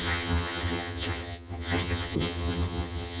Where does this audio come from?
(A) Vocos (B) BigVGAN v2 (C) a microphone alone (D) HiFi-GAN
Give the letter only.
D